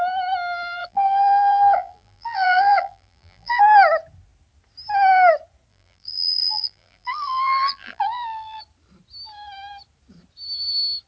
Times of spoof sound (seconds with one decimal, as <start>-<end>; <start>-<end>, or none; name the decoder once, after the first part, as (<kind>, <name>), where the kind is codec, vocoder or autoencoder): 0.8-3.6 (vocoder, BigVGAN v2); 5.7-8.6